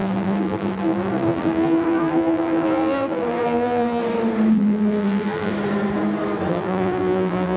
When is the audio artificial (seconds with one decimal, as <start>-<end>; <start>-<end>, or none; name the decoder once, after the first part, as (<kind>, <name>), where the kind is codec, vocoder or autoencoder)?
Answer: 0.0-4.0 (vocoder, BigVGAN v2); 4.5-5.5; 6.5-7.6